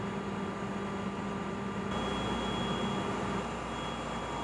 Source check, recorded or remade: recorded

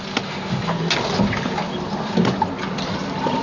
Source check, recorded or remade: recorded